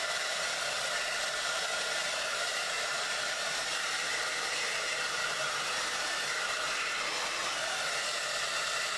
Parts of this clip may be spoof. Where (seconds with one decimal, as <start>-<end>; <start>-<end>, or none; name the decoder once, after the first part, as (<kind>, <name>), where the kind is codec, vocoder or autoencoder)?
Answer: 1.7-6.9 (vocoder, BigVGAN v2)